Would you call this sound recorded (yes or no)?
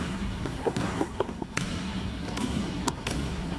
no